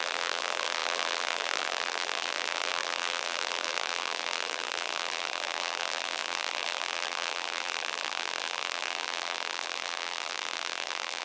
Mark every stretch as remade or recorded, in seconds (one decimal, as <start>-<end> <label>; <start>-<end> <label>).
0.0-11.2 remade